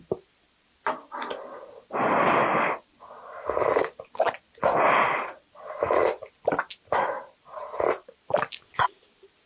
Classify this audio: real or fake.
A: fake